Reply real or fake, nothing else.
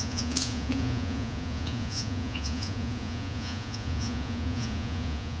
fake